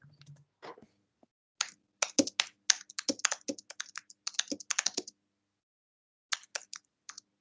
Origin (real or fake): real